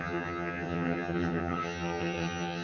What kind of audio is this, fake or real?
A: fake